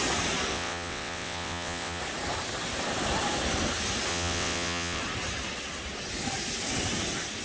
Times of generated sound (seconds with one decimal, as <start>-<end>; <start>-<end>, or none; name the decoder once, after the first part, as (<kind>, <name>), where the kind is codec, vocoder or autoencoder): 0.5-2.0 (vocoder, WaveNeXt); 4.1-5.0